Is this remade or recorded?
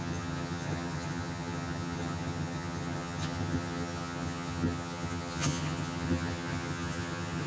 remade